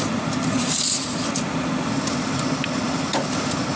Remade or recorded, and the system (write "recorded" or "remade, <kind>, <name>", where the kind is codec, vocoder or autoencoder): remade, vocoder, BigVGAN v2